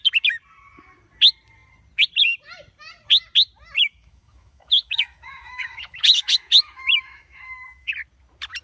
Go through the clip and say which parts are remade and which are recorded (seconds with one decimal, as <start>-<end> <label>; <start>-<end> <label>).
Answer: 0.0-3.8 recorded; 3.8-7.9 remade; 7.9-8.6 recorded